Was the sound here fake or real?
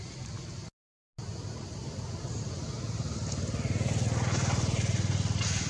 real